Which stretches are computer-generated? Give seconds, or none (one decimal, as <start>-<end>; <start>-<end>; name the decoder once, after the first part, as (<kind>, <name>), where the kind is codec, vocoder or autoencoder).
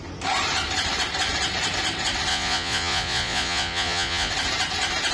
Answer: 2.3-4.3 (vocoder, Vocos)